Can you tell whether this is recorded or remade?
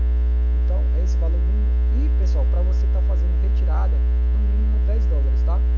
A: recorded